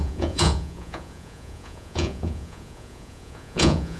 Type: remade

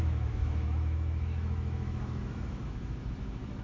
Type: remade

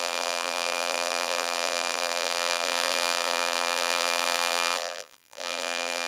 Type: remade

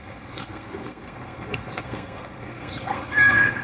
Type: remade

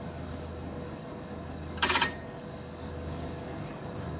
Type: remade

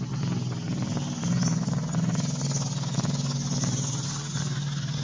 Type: recorded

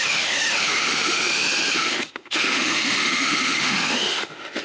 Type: remade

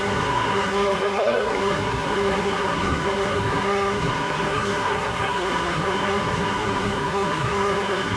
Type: remade